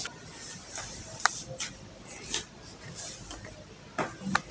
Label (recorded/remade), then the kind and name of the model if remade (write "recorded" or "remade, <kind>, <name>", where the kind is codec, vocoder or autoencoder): recorded